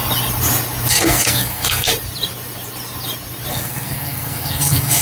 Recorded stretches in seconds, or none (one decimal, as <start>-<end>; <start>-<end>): 0.0-0.9; 1.9-3.5

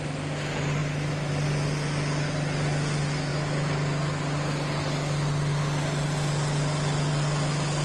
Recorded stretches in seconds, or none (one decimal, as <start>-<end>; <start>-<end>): 0.0-0.8; 1.3-7.8

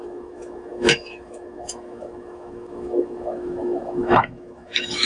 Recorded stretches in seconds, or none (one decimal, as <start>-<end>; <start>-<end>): none

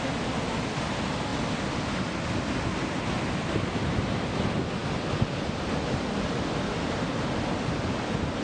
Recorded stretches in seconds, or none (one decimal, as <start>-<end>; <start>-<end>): 0.0-8.4

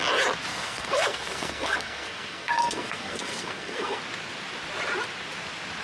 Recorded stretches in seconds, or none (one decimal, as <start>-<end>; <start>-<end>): 0.0-0.5; 4.0-5.8

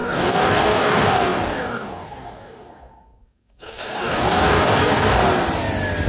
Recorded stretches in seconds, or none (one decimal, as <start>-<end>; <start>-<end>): 5.2-6.1